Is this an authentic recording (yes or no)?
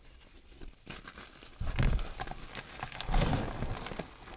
yes